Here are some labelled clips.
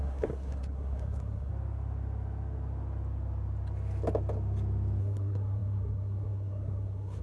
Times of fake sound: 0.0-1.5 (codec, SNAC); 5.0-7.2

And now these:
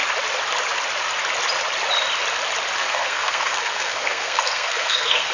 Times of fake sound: 2.8-5.3 (codec, SNAC)

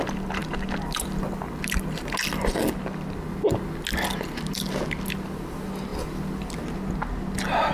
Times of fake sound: none

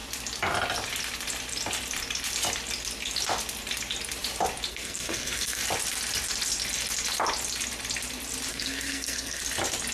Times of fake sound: 4.7-5.6 (codec, SNAC); 8.5-9.4

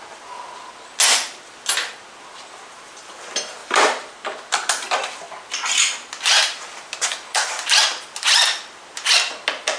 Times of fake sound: none

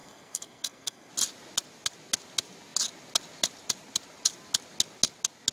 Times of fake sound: 0.0-1.1 (codec, SNAC)

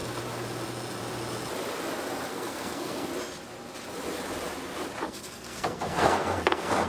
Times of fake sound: 2.3-3.1 (codec, SNAC); 5.0-6.9